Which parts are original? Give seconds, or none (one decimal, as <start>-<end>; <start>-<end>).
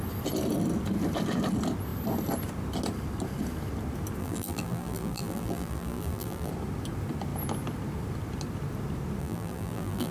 0.0-4.2; 6.5-9.2